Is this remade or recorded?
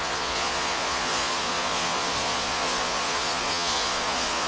remade